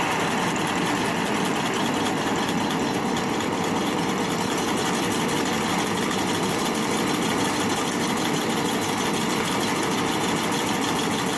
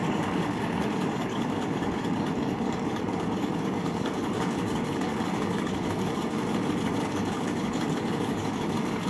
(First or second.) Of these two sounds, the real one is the first